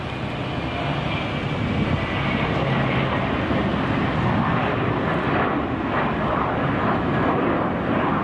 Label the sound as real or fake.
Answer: real